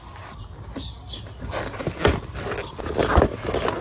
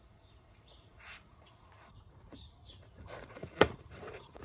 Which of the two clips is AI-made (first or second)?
second